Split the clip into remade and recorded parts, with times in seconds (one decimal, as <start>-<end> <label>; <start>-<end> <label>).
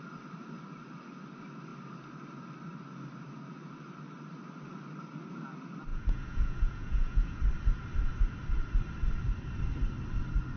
0.0-5.9 recorded; 5.9-7.4 remade; 7.4-10.6 recorded